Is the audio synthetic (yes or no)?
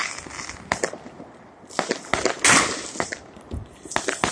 no